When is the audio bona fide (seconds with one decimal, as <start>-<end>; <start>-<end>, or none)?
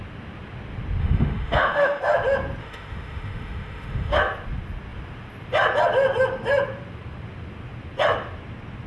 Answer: 0.0-1.0; 2.0-2.6; 4.2-8.9